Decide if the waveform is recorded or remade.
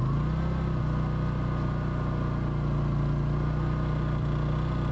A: recorded